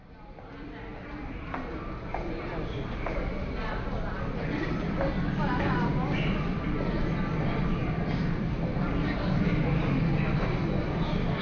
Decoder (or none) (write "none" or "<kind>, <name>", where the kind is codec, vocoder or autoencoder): none